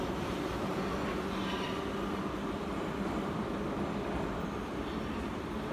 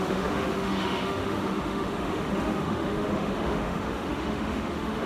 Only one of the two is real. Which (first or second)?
first